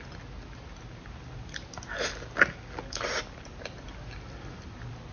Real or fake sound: real